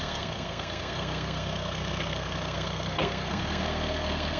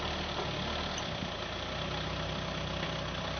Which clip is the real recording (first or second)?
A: second